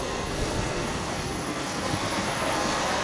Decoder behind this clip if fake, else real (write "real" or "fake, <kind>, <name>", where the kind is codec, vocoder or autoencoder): fake, codec, SNAC